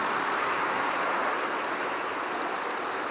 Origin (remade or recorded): recorded